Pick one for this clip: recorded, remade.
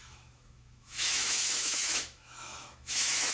remade